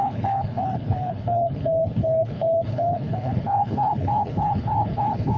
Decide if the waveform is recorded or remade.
remade